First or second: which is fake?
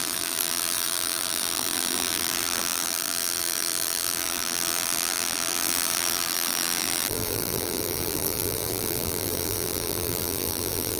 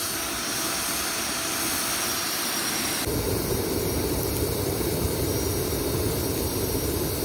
first